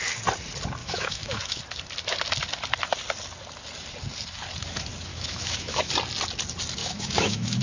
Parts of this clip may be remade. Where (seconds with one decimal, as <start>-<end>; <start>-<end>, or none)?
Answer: 0.8-1.6; 5.1-5.9; 6.8-7.6